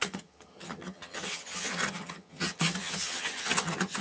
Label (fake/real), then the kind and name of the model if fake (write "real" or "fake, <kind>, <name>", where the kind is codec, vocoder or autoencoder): fake, vocoder, HiFi-GAN